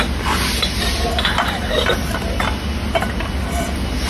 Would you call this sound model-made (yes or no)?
no